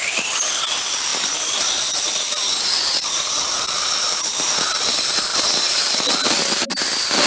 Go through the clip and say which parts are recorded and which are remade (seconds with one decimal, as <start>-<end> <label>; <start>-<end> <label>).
0.0-5.3 recorded; 5.3-6.0 remade; 6.0-7.3 recorded